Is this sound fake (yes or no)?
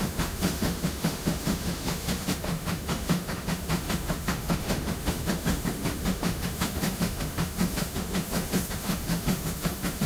yes